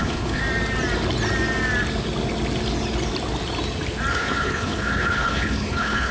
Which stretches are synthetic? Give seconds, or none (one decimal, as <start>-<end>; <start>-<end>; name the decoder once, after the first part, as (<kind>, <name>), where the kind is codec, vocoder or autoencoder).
0.0-0.4 (codec, HILCodec); 4.1-6.1